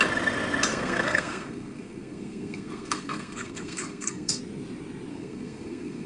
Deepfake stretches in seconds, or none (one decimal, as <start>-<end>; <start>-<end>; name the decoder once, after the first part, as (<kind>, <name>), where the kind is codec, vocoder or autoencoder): 0.7-4.4 (codec, SNAC); 5.1-6.1